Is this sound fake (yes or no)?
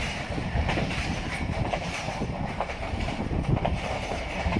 yes